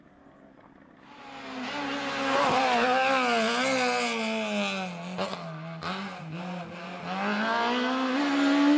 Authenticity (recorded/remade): recorded